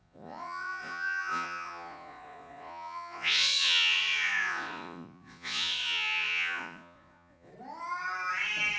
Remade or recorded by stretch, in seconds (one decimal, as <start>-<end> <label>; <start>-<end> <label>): 0.0-7.5 remade; 7.5-8.8 recorded